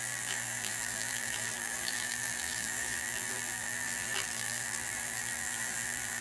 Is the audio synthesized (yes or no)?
yes